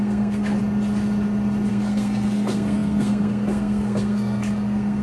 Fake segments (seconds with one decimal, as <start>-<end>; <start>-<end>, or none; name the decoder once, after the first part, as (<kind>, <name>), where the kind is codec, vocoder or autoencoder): 0.0-0.6 (codec, SNAC); 1.7-5.0